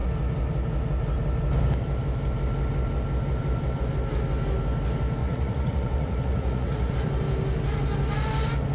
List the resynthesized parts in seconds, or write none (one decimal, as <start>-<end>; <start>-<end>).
5.2-6.9